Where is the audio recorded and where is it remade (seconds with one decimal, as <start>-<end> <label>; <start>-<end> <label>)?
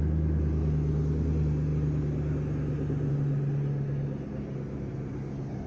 0.0-5.7 recorded